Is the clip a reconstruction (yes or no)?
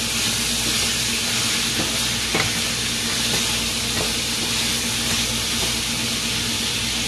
no